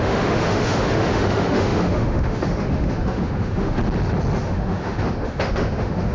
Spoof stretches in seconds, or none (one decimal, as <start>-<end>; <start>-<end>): 0.0-3.8; 4.4-6.1